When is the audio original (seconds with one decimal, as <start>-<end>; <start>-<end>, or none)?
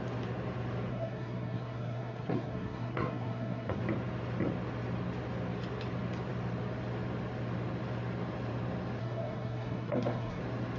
0.0-0.9; 3.8-9.0; 10.4-10.8